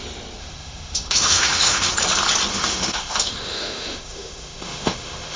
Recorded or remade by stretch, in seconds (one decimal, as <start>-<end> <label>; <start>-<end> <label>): 0.0-0.4 recorded; 0.4-1.9 remade; 1.9-2.5 recorded; 2.5-5.4 remade